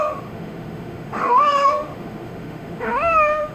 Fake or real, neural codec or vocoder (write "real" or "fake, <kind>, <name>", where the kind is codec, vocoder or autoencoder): fake, autoencoder, DAC-VAE